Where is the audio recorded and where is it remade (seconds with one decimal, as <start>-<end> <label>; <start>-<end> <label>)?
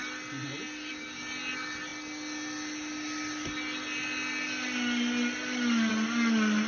0.0-6.7 recorded